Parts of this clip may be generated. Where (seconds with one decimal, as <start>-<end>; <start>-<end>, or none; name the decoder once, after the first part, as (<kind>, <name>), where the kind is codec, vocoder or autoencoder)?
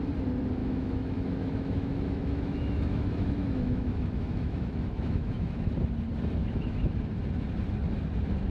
0.6-5.7 (autoencoder, DAC-VAE); 6.4-6.9